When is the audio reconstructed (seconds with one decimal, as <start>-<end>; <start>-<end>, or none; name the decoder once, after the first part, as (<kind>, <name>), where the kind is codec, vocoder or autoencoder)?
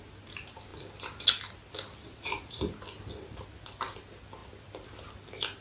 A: 2.0-2.6 (vocoder, Vocos)